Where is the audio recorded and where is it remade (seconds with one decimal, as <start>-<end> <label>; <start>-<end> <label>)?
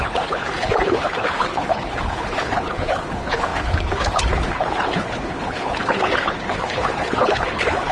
0.0-7.9 remade